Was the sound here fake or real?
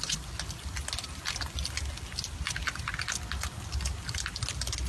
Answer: real